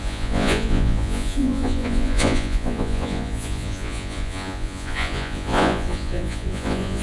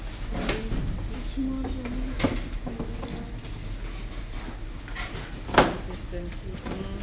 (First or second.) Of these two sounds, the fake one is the first